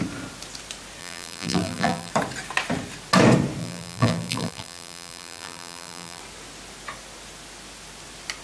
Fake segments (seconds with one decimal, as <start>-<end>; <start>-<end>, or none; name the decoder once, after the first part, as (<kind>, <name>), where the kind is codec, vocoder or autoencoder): 1.0-2.1 (vocoder, BigVGAN v2); 3.6-6.2

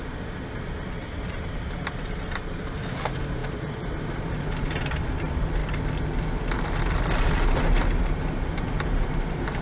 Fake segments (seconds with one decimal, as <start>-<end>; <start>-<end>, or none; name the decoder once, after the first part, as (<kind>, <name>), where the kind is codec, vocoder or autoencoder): 0.0-5.6 (vocoder, BigVGAN v2); 9.0-9.6

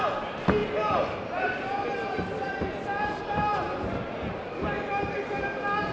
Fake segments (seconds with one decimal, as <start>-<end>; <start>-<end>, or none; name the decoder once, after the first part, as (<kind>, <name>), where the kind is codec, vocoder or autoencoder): none

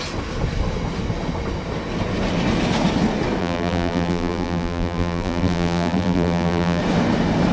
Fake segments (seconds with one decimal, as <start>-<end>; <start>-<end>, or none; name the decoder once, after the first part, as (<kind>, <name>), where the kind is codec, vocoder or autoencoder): 3.4-6.8 (vocoder, BigVGAN v2)

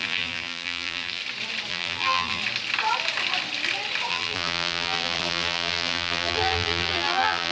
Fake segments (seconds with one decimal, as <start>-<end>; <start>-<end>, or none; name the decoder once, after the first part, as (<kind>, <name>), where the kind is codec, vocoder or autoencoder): 0.0-1.2 (vocoder, BigVGAN v2); 1.7-2.4; 4.1-7.5